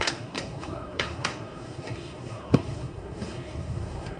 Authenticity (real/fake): fake